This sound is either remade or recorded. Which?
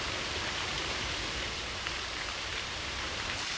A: remade